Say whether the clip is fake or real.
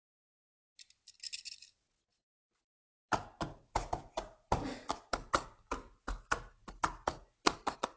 real